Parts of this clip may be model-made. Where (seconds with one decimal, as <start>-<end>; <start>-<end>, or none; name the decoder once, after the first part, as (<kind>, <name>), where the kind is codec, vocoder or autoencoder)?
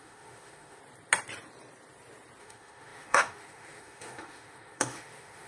0.0-0.8 (autoencoder, DAC-VAE); 2.4-5.5